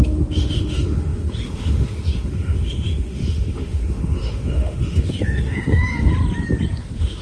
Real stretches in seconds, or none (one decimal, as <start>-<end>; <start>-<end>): 6.1-6.8